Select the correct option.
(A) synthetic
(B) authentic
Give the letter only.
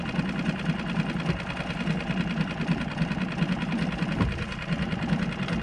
B